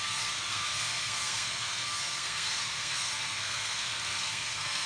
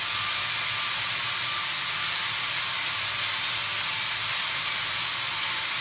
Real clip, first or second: second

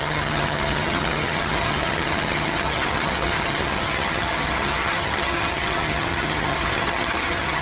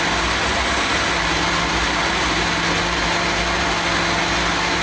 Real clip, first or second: second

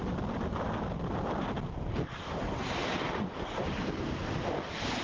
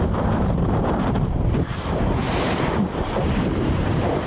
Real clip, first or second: first